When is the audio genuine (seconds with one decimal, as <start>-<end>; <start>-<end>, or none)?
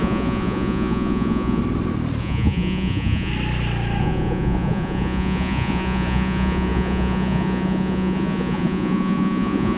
1.6-2.2; 3.3-4.0